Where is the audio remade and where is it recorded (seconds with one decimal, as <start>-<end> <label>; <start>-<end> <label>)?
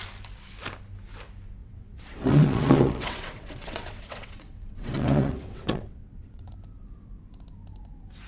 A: 0.0-1.6 recorded; 1.6-6.5 remade; 6.5-8.3 recorded